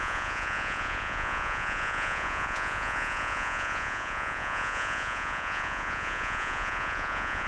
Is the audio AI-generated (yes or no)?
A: yes